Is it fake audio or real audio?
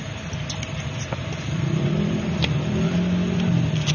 real